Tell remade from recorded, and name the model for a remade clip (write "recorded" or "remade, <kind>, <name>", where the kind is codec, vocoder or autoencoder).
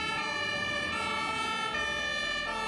recorded